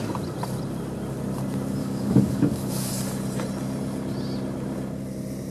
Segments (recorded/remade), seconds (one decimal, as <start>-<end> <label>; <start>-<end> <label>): 0.0-1.8 recorded; 1.8-2.9 remade; 2.9-5.5 recorded